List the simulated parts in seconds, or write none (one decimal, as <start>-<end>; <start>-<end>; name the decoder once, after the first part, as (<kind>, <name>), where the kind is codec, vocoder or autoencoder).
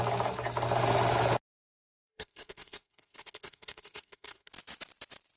1.8-4.5 (codec, SNAC)